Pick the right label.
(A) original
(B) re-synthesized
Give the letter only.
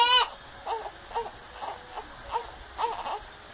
A